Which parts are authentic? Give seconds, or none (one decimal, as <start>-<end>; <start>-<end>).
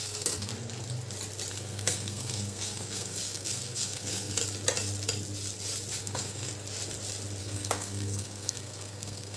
0.5-1.5; 4.4-6.0; 6.5-7.4